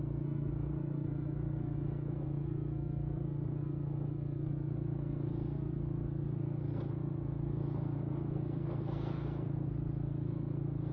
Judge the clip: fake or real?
fake